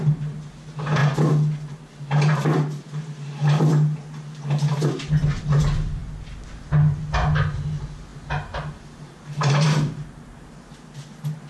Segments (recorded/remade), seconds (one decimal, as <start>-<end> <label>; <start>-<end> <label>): 0.0-8.1 recorded; 8.1-10.8 remade; 10.8-11.5 recorded